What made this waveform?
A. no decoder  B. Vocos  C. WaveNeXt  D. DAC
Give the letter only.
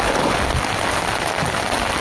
A